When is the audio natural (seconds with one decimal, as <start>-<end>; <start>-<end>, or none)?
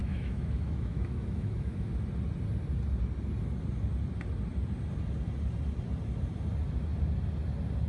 1.9-7.9